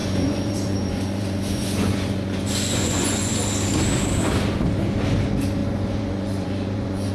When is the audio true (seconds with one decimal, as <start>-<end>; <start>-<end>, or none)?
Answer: 3.3-5.6